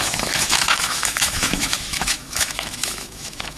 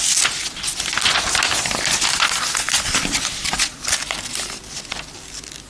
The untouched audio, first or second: second